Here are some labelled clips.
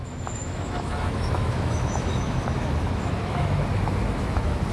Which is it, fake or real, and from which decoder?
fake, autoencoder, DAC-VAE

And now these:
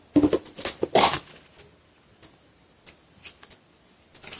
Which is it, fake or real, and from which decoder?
real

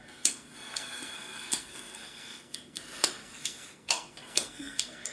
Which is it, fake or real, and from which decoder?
fake, codec, SNAC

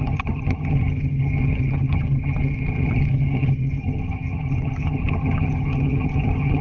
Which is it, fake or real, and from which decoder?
fake, vocoder, HiFi-GAN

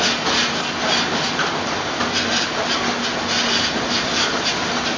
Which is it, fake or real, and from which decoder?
real